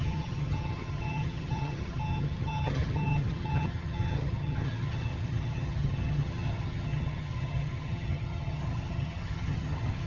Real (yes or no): no